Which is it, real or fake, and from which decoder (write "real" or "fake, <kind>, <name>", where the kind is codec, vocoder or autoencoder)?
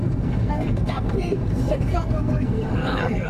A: fake, codec, SNAC